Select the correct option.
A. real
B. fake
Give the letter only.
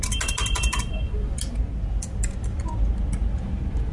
A